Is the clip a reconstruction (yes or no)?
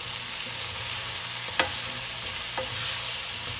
no